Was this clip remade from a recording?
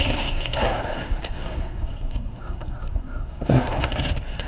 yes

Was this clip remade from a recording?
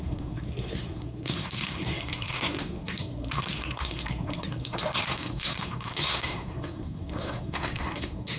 yes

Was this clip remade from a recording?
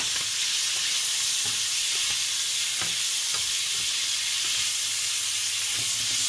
no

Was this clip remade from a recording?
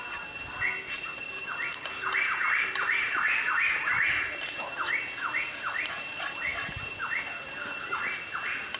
no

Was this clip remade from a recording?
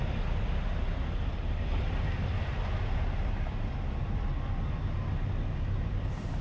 no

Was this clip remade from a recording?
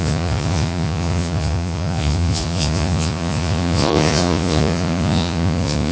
yes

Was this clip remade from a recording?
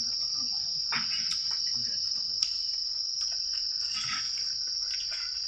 no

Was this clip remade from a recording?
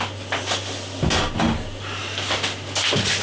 no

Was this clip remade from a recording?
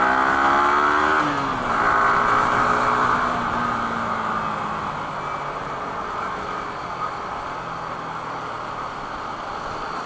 no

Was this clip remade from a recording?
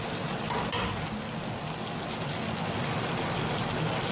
no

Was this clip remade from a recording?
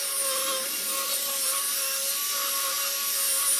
no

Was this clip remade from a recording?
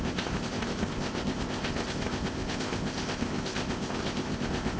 yes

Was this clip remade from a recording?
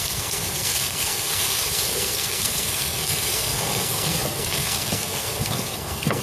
yes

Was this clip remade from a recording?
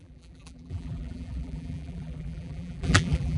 yes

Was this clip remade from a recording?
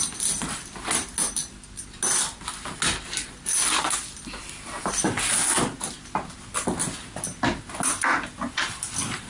no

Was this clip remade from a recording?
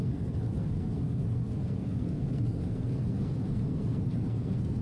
yes